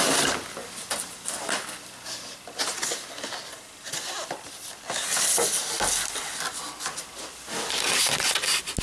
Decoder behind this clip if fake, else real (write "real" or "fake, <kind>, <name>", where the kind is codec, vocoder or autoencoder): real